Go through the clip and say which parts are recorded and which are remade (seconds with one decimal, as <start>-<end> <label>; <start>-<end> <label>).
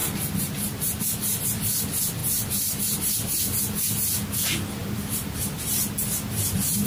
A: 0.0-1.0 remade; 1.0-4.8 recorded; 4.8-5.7 remade; 5.7-6.9 recorded